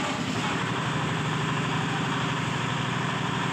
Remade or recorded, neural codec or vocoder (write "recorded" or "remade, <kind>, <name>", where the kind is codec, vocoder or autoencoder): remade, vocoder, BigVGAN v2